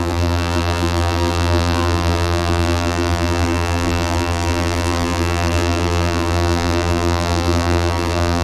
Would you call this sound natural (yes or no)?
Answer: no